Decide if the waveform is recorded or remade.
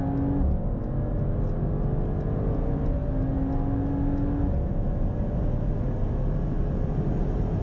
recorded